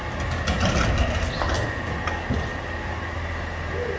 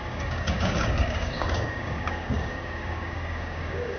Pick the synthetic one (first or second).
second